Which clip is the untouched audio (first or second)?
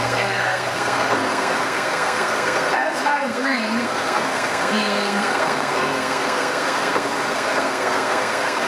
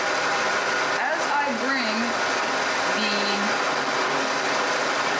second